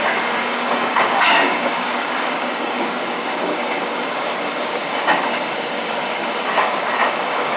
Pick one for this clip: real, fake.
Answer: fake